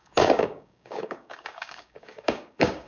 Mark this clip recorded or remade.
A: remade